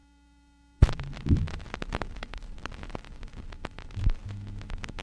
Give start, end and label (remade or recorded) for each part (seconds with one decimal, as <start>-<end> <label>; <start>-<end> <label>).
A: 0.0-4.2 remade; 4.2-5.0 recorded